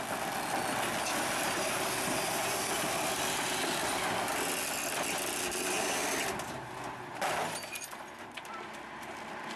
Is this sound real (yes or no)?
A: yes